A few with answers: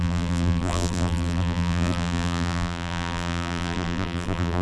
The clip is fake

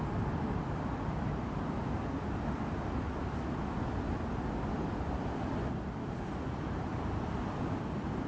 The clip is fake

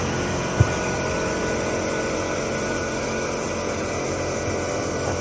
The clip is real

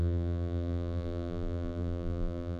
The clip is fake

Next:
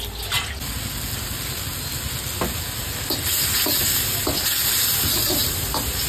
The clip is real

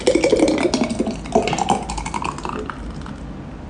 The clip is real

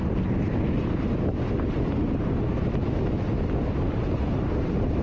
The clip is real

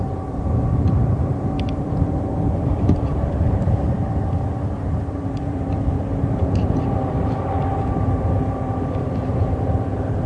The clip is fake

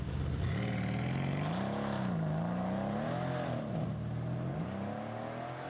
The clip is real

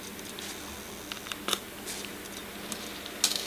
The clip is real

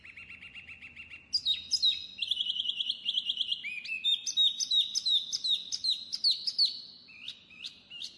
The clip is real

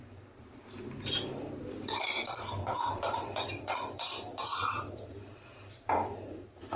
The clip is fake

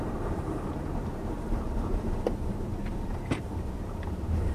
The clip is fake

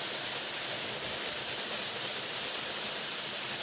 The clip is fake